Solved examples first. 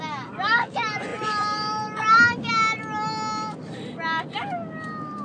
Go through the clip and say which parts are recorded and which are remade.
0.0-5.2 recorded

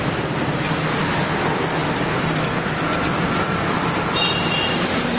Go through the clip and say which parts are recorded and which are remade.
0.0-5.2 recorded

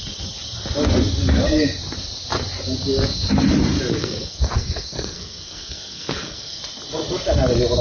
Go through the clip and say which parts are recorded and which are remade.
0.0-3.9 recorded; 3.9-6.6 remade; 6.6-7.8 recorded

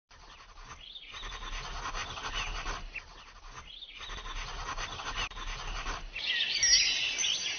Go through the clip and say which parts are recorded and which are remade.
0.0-7.6 recorded

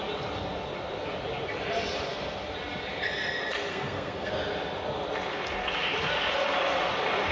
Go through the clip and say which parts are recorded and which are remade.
0.0-3.7 recorded; 3.7-4.3 remade; 4.3-7.3 recorded